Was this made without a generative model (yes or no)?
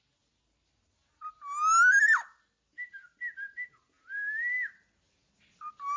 yes